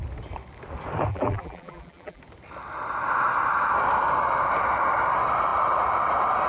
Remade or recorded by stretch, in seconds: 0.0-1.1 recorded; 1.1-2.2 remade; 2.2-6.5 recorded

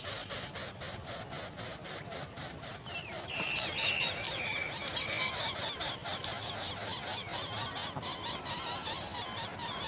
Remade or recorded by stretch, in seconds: 0.0-1.7 recorded; 1.7-4.4 remade; 4.4-9.9 recorded

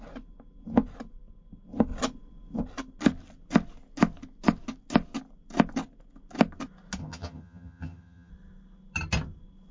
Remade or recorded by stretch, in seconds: 0.0-7.0 recorded; 7.0-8.3 remade; 8.3-9.7 recorded

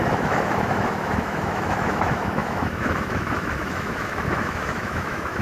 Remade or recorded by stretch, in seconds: 0.0-5.4 remade

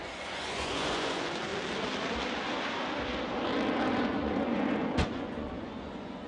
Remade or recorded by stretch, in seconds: 0.0-1.5 remade; 1.5-4.0 recorded; 4.0-6.3 remade

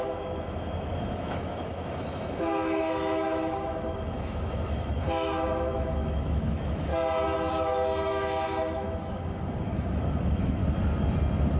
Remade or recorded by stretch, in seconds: 0.0-6.9 remade; 6.9-7.5 recorded; 7.5-10.6 remade; 10.6-11.6 recorded

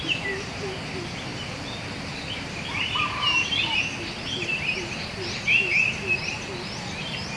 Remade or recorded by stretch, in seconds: 0.0-7.4 recorded

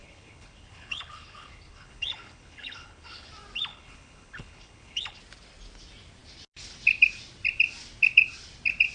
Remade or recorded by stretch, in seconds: 0.0-3.3 remade; 3.3-3.7 recorded; 3.7-5.2 remade; 5.2-8.9 recorded